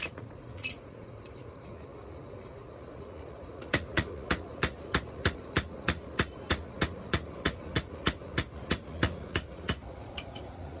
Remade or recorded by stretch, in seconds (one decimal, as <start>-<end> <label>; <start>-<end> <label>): 0.0-10.8 remade